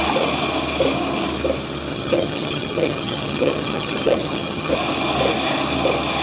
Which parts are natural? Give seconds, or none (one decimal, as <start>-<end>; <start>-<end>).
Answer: 0.0-1.9; 4.7-6.2